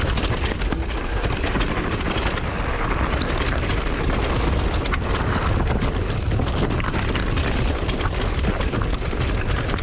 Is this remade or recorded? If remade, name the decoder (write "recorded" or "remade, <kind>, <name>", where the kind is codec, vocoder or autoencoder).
recorded